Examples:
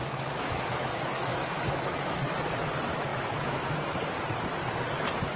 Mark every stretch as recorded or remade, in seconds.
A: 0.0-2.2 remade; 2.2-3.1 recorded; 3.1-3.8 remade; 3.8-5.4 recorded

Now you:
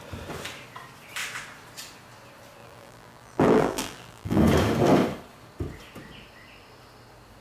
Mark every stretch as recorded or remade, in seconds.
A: 0.0-2.6 recorded; 2.6-4.4 remade; 4.4-7.4 recorded